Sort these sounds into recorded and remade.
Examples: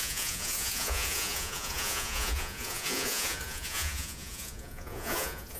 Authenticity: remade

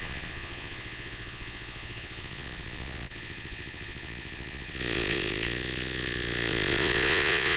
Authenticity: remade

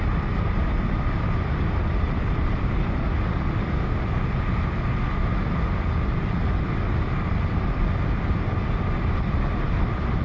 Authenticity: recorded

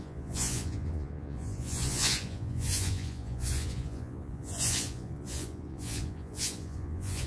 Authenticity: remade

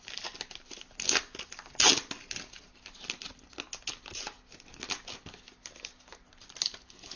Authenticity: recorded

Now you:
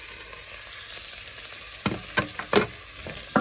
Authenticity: recorded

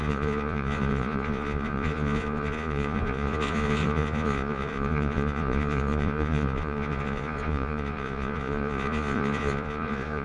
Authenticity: remade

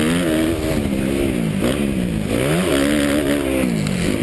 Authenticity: recorded